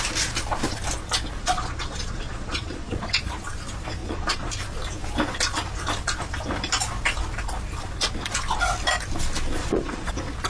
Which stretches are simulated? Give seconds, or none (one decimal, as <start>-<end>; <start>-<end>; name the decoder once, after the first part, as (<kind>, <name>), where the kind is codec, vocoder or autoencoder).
1.4-3.2 (vocoder, Vocos); 4.0-4.5; 9.6-10.1